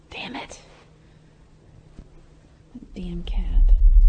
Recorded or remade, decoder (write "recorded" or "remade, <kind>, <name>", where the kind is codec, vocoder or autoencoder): recorded